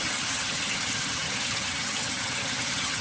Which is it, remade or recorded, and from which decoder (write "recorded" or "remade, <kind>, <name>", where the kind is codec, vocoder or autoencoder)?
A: remade, vocoder, HiFi-GAN